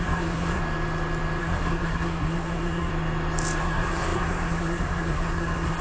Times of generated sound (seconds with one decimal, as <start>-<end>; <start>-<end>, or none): 0.0-0.6; 1.4-2.9; 3.6-5.8